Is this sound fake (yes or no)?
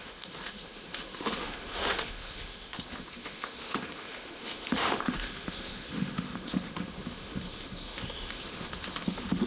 yes